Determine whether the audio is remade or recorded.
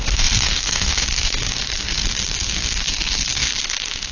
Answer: remade